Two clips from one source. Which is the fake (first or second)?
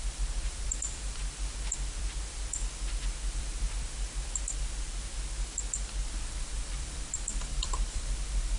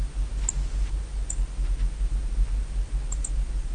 first